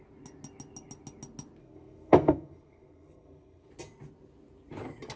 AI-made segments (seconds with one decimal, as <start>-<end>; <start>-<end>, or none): 1.6-3.7